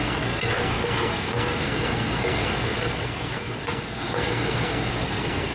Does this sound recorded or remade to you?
remade